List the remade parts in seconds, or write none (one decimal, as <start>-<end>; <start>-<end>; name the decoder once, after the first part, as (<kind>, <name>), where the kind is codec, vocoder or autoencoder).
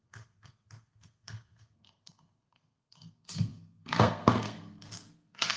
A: 0.0-5.6 (codec, SNAC)